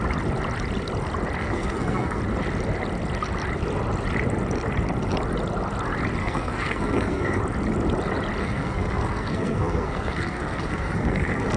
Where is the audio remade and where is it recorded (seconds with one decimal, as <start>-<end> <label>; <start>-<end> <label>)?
0.0-1.4 recorded; 1.4-2.2 remade; 2.2-6.2 recorded; 6.2-7.4 remade; 7.4-8.4 recorded; 8.4-11.6 remade